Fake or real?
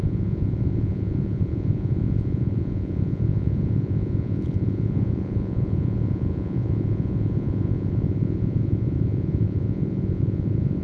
fake